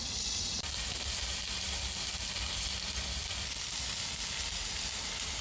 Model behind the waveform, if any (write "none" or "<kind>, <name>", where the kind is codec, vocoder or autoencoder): none